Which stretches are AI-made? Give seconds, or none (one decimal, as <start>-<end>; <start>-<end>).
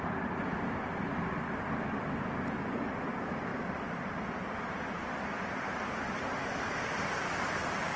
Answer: none